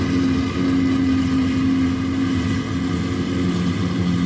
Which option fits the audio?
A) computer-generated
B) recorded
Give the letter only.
B